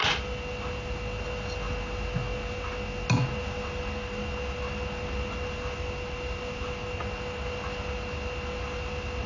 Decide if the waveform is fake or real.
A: real